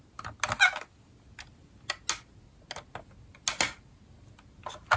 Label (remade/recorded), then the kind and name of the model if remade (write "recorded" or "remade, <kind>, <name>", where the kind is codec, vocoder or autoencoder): recorded